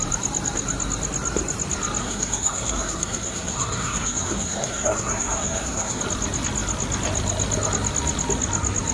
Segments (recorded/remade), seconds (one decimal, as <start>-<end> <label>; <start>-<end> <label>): 0.0-2.0 recorded; 2.0-6.0 remade; 6.0-8.9 recorded